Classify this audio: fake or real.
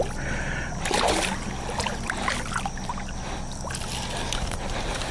real